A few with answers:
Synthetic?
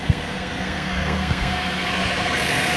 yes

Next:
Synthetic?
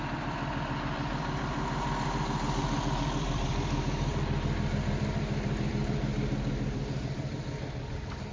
yes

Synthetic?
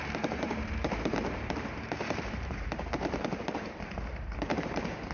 yes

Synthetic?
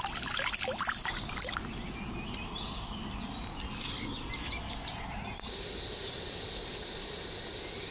no